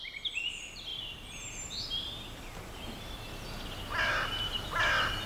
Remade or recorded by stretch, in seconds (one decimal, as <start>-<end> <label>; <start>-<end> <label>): 0.0-0.9 recorded; 0.9-3.1 remade; 3.1-5.3 recorded